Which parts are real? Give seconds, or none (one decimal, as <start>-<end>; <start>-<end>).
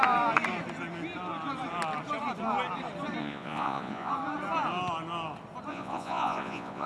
0.0-3.2; 4.1-5.7